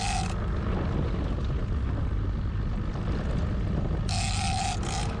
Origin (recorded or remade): recorded